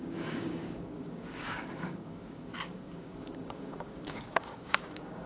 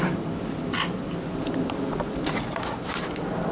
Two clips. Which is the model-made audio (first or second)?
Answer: first